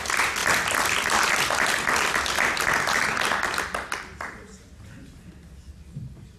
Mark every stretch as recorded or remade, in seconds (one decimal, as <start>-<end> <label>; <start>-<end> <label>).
0.0-4.1 recorded; 4.1-4.7 remade; 4.7-6.4 recorded